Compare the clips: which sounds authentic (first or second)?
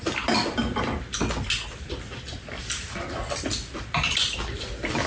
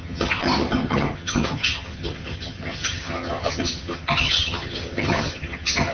first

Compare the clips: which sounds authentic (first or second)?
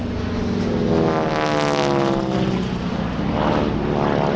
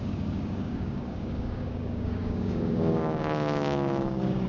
first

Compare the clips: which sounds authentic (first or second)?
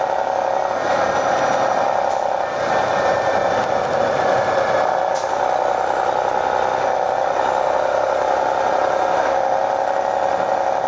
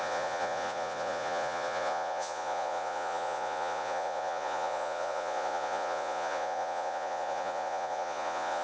first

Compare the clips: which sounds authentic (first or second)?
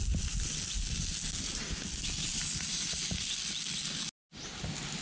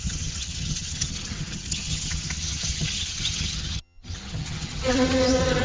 first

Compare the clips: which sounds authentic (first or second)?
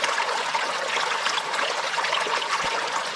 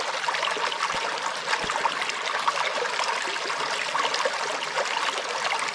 second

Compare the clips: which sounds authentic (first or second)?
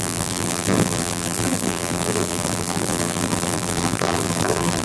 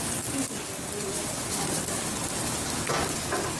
second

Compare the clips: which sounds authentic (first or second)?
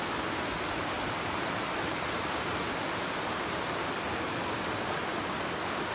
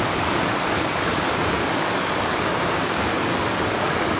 first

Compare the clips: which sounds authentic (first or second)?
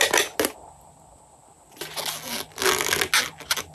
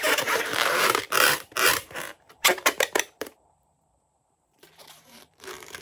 first